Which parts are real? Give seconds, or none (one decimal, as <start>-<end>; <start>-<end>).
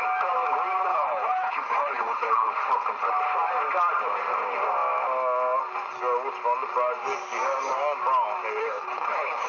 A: 0.0-0.9; 2.5-8.6